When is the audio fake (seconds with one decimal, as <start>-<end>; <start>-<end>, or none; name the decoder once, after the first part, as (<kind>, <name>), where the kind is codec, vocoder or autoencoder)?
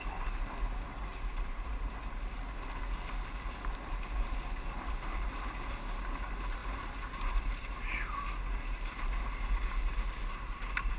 1.1-2.0 (vocoder, BigVGAN v2); 6.6-7.7